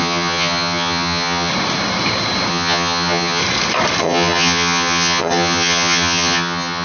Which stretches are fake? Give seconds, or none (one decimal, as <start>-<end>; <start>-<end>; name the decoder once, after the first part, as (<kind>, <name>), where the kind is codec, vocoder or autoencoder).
0.0-1.5 (vocoder, HiFi-GAN); 2.5-3.4; 4.0-6.8